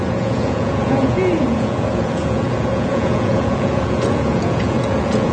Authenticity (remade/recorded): remade